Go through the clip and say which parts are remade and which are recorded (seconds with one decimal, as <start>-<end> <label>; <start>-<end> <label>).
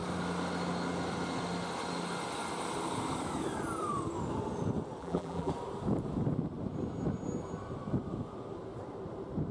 0.0-5.0 recorded; 5.0-5.5 remade; 5.5-9.5 recorded